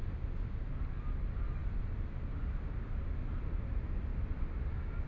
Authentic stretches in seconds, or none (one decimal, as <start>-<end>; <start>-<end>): 0.0-5.1